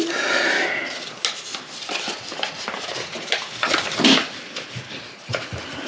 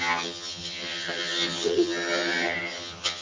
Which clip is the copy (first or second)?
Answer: second